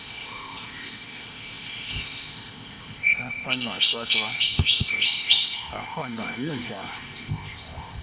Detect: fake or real fake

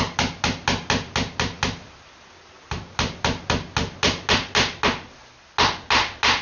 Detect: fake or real real